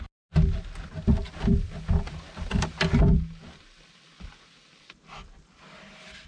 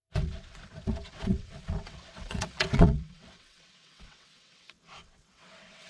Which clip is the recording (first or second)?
first